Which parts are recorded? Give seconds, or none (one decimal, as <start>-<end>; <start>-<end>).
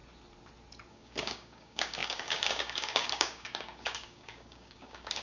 0.0-0.9